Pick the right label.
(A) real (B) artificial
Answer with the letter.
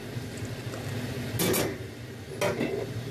A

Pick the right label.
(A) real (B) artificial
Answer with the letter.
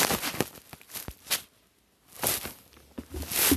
A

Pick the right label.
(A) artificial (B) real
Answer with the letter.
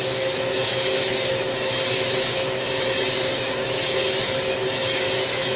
A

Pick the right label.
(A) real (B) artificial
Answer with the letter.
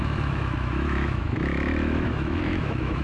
B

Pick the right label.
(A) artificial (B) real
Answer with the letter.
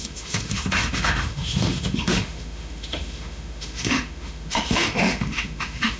A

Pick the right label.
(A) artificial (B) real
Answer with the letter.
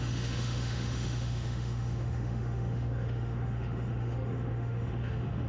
A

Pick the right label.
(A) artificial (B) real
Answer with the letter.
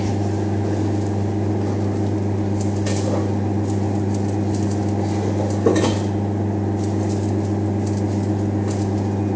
B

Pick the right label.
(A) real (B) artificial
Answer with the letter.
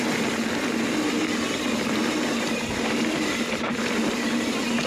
A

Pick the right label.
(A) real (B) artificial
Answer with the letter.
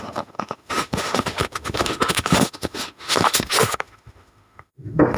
B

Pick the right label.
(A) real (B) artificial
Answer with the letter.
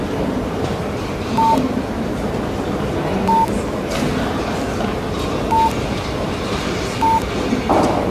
A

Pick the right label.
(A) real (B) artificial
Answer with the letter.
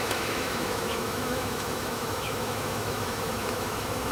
B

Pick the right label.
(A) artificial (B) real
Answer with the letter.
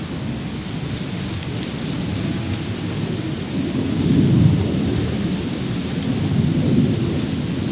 B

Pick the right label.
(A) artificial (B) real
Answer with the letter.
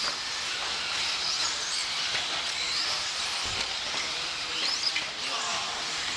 B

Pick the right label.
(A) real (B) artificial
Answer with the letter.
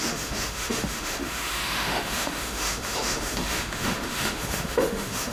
B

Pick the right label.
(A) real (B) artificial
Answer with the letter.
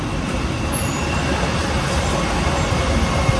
A